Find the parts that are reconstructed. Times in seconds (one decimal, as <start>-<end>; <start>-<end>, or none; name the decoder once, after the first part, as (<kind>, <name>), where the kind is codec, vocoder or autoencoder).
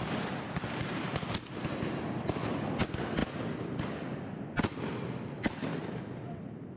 none